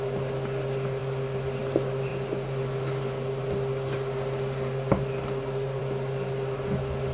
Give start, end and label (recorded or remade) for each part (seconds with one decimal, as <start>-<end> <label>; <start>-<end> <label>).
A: 0.0-7.1 recorded